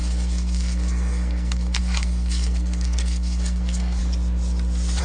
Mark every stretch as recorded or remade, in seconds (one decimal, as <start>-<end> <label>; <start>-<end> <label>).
0.0-4.0 remade; 4.0-5.0 recorded